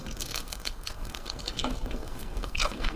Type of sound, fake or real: fake